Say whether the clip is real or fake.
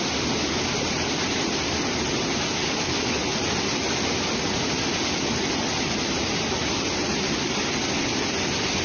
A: real